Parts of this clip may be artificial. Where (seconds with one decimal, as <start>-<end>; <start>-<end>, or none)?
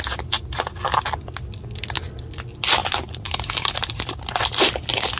2.8-3.3